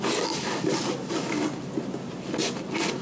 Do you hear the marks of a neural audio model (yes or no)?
no